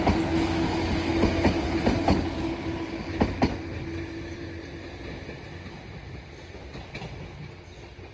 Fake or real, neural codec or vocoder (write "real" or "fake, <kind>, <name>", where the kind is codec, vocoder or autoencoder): real